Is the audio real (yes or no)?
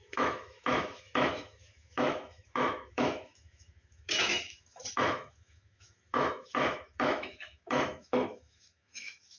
no